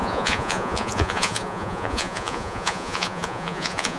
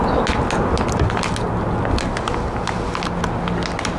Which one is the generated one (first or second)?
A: first